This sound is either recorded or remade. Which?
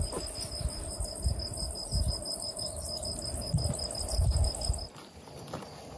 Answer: recorded